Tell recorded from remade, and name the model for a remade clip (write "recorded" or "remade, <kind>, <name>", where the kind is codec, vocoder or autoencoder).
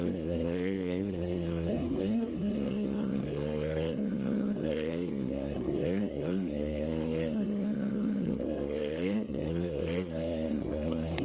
remade, codec, SNAC